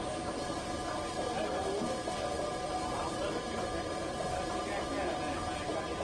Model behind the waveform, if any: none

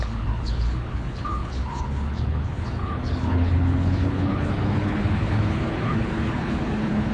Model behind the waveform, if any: codec, HILCodec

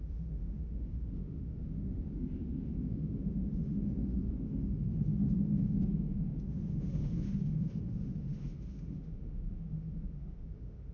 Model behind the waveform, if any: autoencoder, DAC-VAE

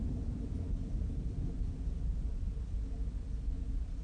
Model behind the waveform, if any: none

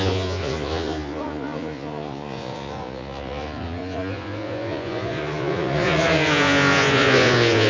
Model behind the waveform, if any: vocoder, Vocos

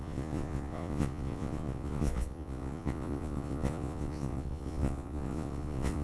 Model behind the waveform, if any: vocoder, Vocos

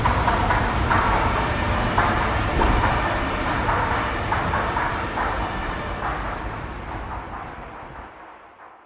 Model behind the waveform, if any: vocoder, BigVGAN v2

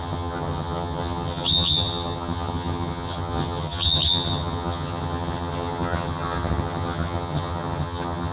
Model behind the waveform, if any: vocoder, HiFi-GAN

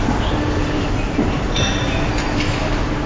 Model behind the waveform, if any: none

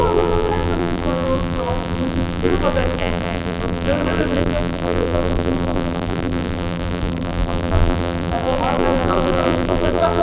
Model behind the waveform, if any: vocoder, BigVGAN v2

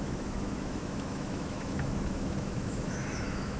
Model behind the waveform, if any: autoencoder, DAC-VAE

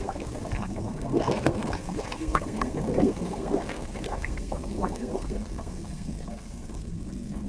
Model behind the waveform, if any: codec, SNAC